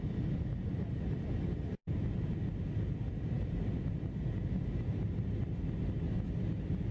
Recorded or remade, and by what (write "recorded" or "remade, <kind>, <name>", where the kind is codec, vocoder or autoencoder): recorded